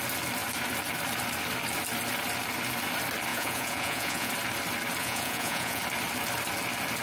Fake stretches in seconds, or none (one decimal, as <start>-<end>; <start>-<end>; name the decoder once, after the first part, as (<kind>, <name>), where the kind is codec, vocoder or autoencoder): 3.3-4.3 (vocoder, Vocos); 5.0-5.8